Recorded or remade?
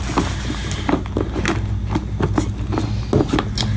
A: recorded